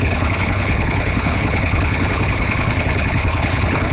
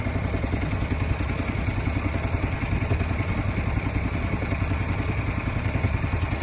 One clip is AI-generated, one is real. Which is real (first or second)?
second